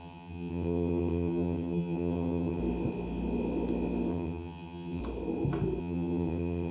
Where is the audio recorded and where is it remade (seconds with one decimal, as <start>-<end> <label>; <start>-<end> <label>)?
0.0-2.6 remade; 2.6-4.1 recorded; 4.1-5.0 remade; 5.0-5.8 recorded; 5.8-6.7 remade